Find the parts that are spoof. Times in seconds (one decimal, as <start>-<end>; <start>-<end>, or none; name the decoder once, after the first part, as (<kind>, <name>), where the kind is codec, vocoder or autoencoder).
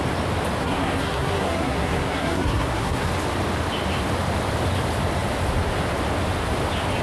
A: 0.6-3.1 (codec, SNAC)